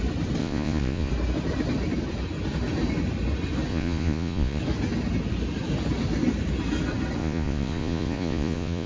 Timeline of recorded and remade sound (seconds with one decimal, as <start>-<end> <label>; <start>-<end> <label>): 0.0-0.4 recorded; 0.4-1.1 remade; 1.1-3.7 recorded; 3.7-4.6 remade; 4.6-7.2 recorded; 7.2-8.9 remade